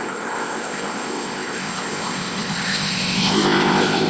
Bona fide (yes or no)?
no